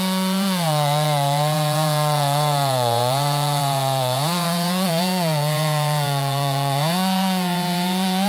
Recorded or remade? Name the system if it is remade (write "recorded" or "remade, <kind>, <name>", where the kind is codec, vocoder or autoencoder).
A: remade, vocoder, Vocos